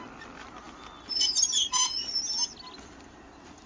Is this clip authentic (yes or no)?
yes